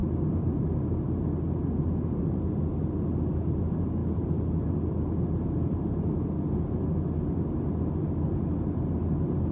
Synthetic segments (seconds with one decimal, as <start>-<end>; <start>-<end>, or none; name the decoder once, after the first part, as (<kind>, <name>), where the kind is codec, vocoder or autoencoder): none